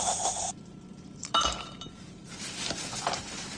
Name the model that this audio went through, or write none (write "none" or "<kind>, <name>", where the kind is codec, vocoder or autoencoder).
vocoder, BigVGAN v2